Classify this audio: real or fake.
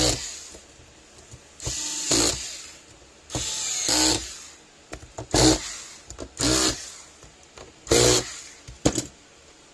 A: real